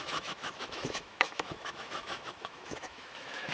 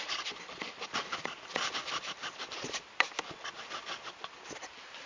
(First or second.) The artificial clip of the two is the first